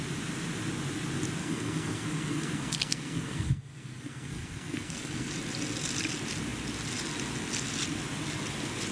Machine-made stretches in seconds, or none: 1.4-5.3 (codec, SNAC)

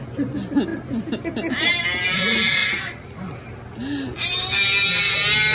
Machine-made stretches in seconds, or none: 2.6-3.2 (vocoder, Vocos)